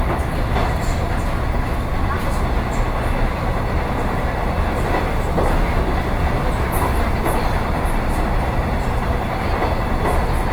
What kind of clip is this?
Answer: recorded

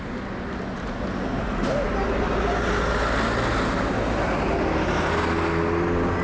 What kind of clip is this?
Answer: recorded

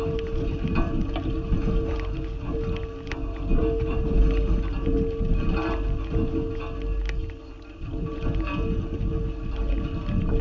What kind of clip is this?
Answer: recorded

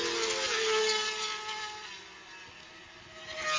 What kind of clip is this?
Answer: recorded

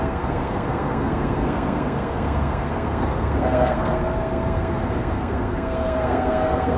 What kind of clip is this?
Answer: remade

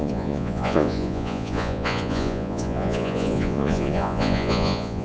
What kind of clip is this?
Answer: remade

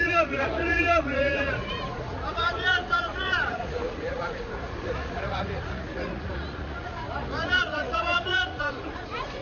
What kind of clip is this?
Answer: remade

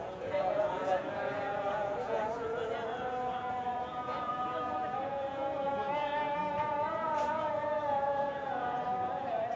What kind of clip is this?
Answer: remade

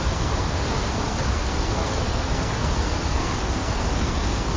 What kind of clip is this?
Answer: remade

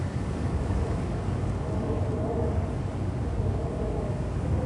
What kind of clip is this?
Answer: remade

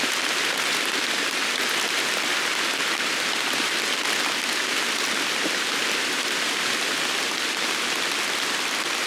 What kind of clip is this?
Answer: recorded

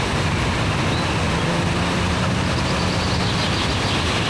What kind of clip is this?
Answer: recorded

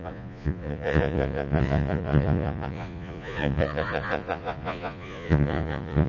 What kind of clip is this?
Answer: remade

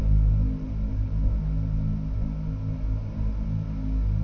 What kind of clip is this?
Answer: recorded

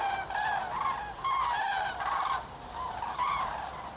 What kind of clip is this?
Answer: recorded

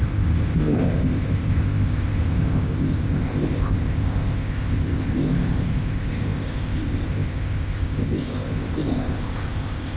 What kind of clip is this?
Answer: remade